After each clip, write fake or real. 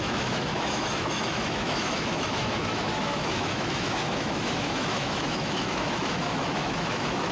fake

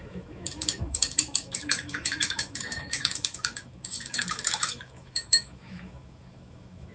fake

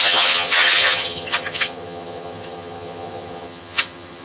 fake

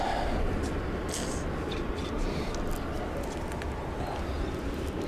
real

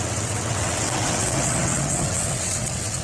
fake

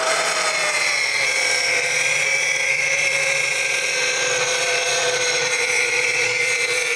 fake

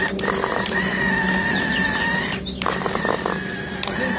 real